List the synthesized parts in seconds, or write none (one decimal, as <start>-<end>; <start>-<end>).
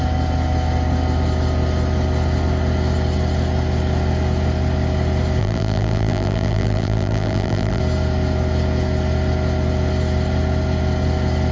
5.4-7.8